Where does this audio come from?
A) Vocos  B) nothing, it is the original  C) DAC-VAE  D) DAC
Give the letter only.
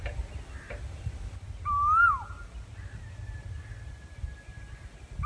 B